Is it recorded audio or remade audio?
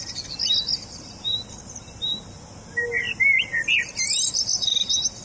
recorded